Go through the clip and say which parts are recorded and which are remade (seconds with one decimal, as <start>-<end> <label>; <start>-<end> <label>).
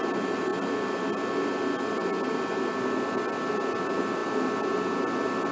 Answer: 0.0-5.5 recorded